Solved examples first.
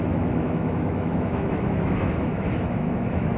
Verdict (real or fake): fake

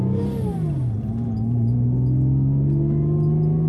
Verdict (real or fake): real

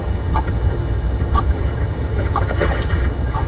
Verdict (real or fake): fake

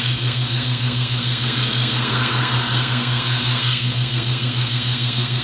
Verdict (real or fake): fake